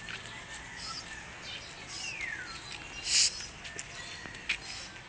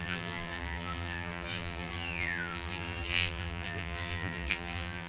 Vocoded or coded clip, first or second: second